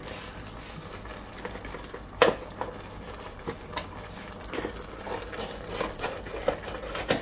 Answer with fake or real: real